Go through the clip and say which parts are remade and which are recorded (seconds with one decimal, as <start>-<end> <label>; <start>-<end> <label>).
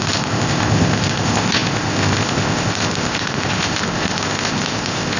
0.0-5.2 remade